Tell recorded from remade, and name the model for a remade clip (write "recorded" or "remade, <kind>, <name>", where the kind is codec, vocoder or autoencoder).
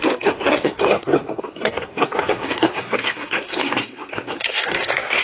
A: remade, codec, SNAC